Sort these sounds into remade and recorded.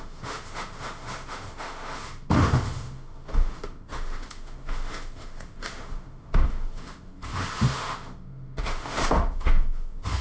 remade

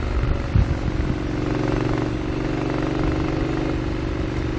recorded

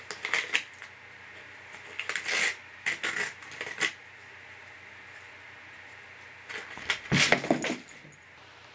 recorded